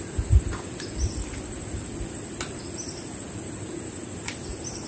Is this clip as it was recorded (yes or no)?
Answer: yes